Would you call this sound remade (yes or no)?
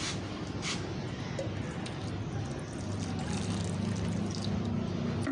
no